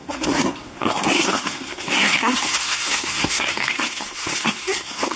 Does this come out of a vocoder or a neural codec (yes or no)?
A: yes